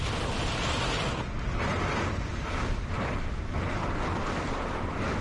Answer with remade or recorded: recorded